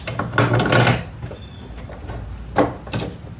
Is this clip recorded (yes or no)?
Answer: yes